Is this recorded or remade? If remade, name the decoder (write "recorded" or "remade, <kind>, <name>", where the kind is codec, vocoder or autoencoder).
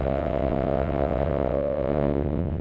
remade, vocoder, WaveNeXt